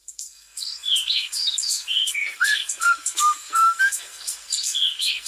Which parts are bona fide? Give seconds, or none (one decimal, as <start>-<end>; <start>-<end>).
none